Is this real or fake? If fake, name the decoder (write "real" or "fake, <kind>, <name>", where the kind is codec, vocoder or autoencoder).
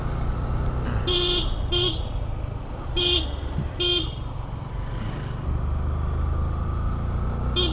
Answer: real